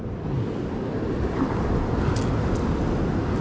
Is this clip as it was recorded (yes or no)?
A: yes